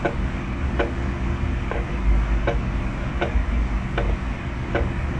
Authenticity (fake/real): fake